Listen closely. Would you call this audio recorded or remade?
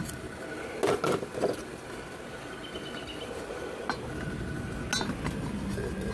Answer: recorded